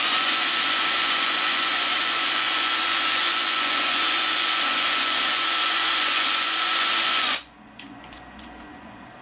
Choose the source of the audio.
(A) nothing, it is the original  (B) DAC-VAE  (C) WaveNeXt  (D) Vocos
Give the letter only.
D